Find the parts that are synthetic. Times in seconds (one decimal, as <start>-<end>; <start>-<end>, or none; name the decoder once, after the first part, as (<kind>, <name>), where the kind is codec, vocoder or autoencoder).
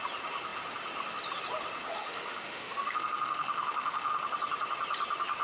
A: 1.9-4.2 (autoencoder, DAC-VAE)